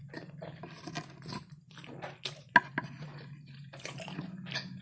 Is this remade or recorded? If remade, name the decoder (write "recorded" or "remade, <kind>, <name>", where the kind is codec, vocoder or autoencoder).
recorded